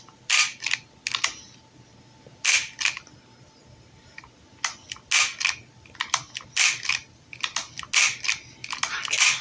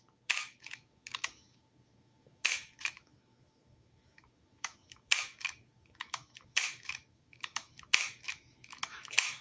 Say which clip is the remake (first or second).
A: second